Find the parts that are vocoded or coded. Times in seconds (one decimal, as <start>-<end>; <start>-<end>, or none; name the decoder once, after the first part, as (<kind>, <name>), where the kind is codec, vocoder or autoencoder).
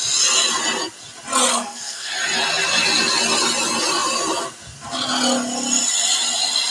1.5-2.1 (codec, SNAC)